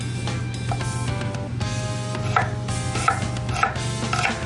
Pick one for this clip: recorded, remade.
recorded